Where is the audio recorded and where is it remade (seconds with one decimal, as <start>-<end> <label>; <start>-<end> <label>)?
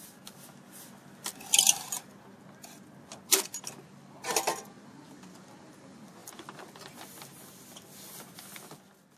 0.0-9.2 recorded